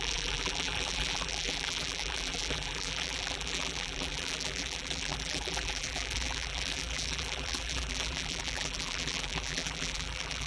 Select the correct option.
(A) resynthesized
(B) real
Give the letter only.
A